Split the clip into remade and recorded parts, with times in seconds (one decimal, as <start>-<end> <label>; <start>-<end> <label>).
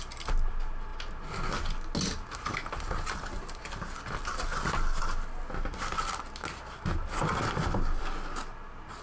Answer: 0.0-9.0 recorded